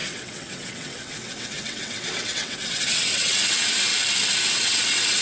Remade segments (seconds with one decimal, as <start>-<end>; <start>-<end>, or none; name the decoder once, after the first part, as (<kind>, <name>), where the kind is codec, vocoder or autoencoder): 0.0-3.9 (vocoder, WaveNeXt); 4.5-5.2